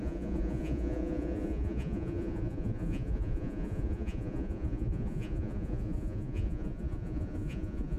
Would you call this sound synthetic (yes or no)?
yes